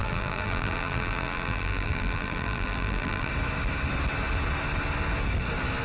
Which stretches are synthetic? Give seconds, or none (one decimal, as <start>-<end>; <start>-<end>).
0.0-3.3